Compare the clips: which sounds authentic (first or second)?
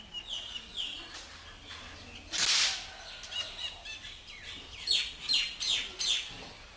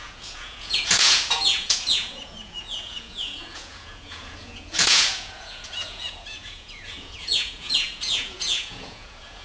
first